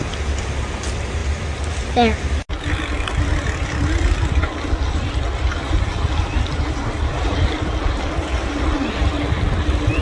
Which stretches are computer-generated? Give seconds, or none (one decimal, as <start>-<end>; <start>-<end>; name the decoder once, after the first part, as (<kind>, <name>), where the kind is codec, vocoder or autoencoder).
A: none